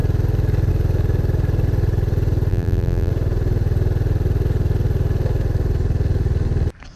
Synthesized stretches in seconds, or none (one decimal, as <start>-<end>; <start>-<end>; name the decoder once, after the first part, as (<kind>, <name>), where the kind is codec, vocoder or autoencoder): 2.5-3.1 (vocoder, BigVGAN v2)